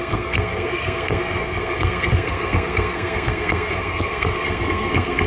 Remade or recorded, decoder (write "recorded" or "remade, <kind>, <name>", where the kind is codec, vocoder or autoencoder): remade, codec, SNAC